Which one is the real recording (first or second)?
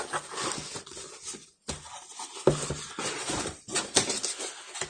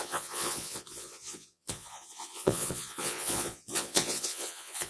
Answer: first